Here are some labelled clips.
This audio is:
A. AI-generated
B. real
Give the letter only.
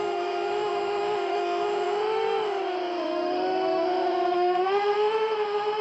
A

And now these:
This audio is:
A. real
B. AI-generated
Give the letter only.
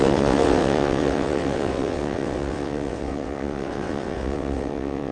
B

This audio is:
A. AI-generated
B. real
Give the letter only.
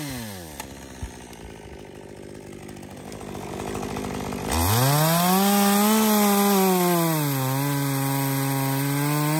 B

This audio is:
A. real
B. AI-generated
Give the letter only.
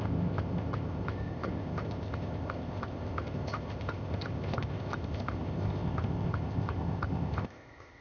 B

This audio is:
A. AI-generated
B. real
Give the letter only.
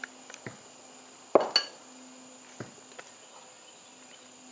B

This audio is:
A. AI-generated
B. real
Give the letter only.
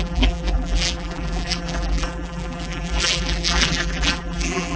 A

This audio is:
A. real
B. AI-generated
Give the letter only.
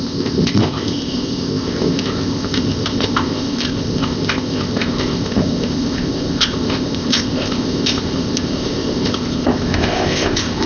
B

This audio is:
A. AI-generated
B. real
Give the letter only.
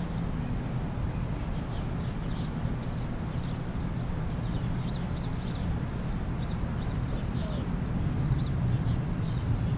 B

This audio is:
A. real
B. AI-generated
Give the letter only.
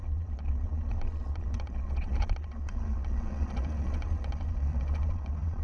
B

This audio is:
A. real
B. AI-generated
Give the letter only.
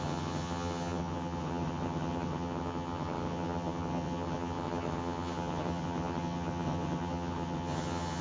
B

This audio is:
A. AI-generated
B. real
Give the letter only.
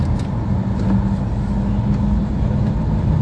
B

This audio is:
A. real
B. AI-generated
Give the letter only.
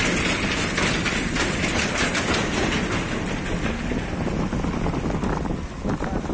A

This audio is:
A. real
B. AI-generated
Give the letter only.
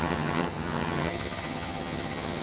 B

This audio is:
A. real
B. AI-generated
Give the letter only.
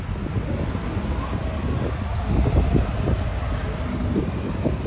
A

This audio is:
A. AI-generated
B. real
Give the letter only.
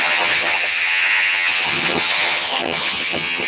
A